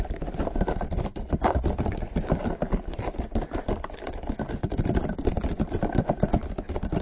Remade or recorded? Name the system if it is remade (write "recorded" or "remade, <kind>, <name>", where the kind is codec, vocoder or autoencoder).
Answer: recorded